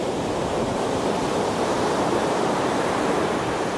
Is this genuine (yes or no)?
no